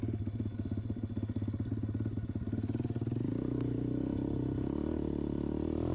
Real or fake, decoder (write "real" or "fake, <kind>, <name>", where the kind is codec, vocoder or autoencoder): real